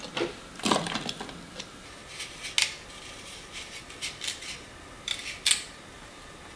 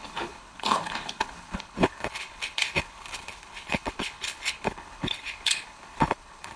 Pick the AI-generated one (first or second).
second